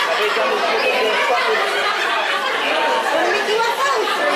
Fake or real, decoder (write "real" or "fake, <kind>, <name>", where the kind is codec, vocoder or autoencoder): real